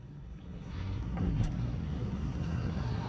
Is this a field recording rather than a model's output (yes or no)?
no